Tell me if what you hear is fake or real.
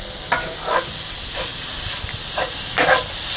fake